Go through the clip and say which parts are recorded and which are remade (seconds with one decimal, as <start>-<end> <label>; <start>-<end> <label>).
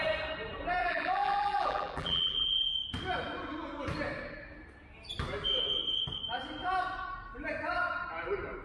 0.0-0.8 recorded; 0.8-2.7 remade; 2.7-8.6 recorded